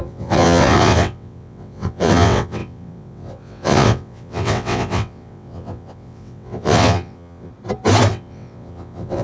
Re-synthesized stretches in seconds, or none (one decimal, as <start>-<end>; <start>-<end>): 0.0-7.5; 8.1-9.2